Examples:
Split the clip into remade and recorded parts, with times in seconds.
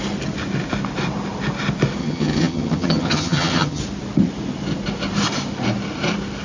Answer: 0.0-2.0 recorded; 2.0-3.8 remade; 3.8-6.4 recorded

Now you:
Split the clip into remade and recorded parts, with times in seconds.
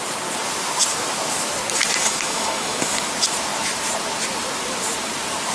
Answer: 0.0-2.0 recorded; 2.0-3.1 remade; 3.1-5.5 recorded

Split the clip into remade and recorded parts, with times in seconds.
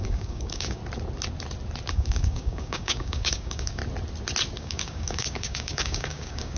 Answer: 0.0-0.8 remade; 0.8-1.9 recorded; 1.9-3.8 remade; 3.8-4.6 recorded; 4.6-6.6 remade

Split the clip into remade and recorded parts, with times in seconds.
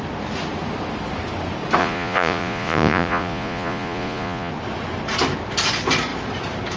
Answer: 0.0-1.8 recorded; 1.8-4.5 remade; 4.5-6.8 recorded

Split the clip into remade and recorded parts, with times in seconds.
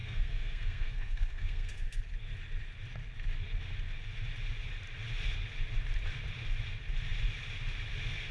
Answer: 0.0-2.0 remade; 2.0-8.3 recorded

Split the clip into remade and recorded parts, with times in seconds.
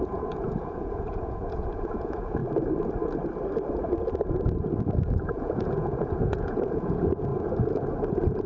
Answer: 0.0-2.4 remade; 2.4-5.0 recorded; 5.0-7.3 remade; 7.3-8.1 recorded; 8.1-8.5 remade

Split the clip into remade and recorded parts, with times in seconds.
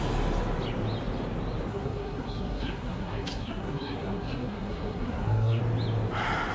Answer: 0.0-1.7 recorded; 1.7-5.6 remade; 5.6-6.5 recorded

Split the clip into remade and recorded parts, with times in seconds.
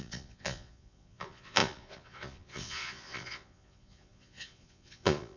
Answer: 0.0-5.4 remade